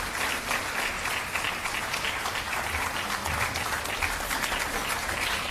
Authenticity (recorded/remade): recorded